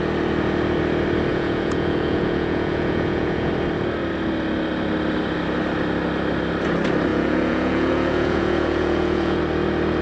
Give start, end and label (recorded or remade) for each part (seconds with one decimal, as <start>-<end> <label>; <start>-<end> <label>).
0.0-1.3 recorded; 1.3-3.5 remade; 3.5-7.1 recorded; 7.1-9.4 remade; 9.4-10.0 recorded